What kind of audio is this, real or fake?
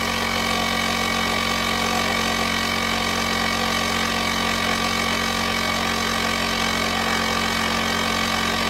real